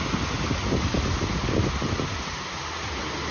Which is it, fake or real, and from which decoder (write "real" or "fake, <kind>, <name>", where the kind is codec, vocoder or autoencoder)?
real